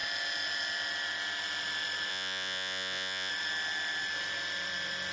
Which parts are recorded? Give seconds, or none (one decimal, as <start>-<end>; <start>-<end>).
0.0-2.1; 3.3-5.1